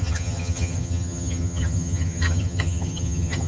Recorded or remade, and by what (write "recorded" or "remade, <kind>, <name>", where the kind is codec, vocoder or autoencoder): remade, vocoder, HiFi-GAN